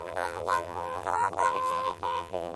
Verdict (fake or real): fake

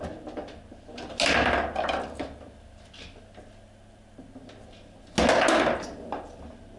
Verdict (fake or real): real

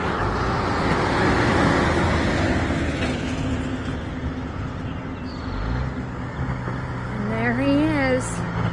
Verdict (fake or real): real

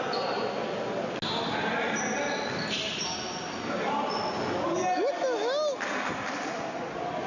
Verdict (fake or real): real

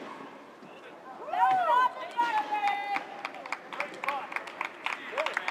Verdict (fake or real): real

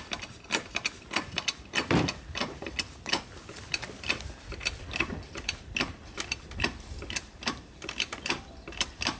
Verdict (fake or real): fake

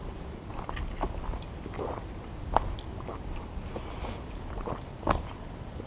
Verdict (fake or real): real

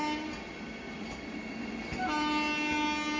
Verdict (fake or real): real